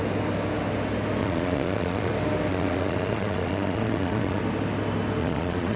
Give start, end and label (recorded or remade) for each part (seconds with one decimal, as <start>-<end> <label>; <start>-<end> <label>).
0.0-1.2 recorded; 1.2-2.1 remade; 2.1-2.5 recorded; 2.5-4.4 remade; 4.4-5.2 recorded; 5.2-5.8 remade

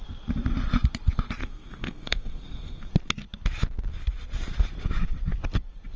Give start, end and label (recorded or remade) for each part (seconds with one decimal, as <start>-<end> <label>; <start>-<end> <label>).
0.0-1.4 recorded; 1.4-2.9 remade; 2.9-6.0 recorded

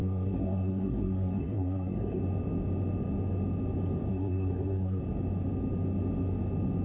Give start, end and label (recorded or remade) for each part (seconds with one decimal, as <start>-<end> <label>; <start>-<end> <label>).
0.0-2.2 remade; 2.2-4.1 recorded; 4.1-5.0 remade; 5.0-6.8 recorded

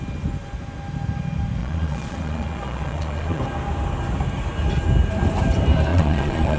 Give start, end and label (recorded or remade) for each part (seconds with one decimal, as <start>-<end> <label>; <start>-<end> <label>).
0.0-1.6 recorded; 1.6-3.4 remade; 3.4-5.9 recorded; 5.9-6.6 remade